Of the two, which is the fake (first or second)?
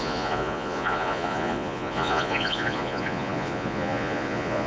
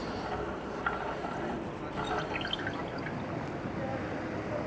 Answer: first